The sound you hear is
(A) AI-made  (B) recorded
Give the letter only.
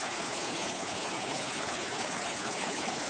A